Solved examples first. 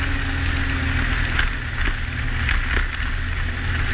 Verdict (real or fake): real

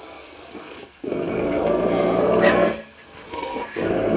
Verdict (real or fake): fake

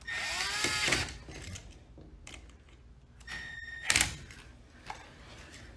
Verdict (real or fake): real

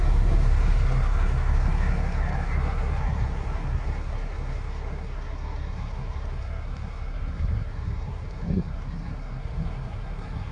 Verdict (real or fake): fake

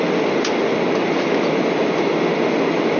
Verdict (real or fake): real